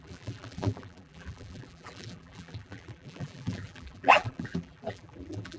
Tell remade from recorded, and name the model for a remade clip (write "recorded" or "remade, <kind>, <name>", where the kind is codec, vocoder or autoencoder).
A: remade, vocoder, BigVGAN v2